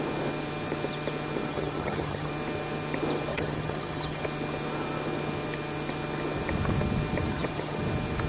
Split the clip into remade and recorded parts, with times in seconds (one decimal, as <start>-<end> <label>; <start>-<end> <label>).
0.0-1.5 recorded; 1.5-2.3 remade; 2.3-3.3 recorded; 3.3-4.2 remade; 4.2-7.3 recorded; 7.3-7.8 remade; 7.8-8.3 recorded